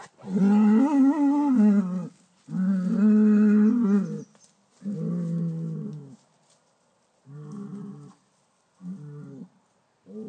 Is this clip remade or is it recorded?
recorded